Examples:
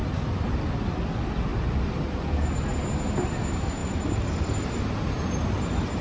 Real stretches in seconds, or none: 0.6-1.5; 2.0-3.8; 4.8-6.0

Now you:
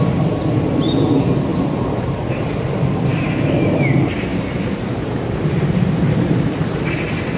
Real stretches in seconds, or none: 0.0-1.5; 2.7-4.3; 6.9-7.4

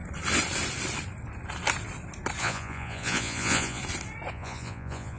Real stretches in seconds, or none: 0.0-2.4; 3.8-4.3

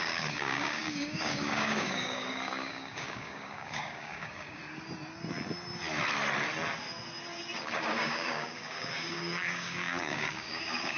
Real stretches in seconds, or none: 4.6-7.6

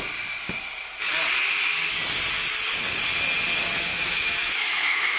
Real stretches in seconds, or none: 0.0-3.9